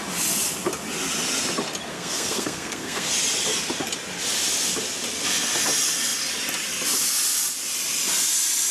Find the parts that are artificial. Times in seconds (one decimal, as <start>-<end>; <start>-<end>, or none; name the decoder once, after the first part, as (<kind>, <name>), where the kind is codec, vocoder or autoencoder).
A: 1.9-3.1 (codec, SNAC)